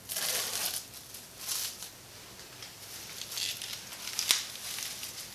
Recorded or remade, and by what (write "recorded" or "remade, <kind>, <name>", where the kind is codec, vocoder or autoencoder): recorded